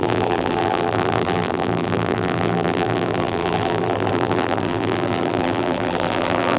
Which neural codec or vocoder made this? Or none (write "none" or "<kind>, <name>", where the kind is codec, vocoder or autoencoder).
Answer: vocoder, BigVGAN v2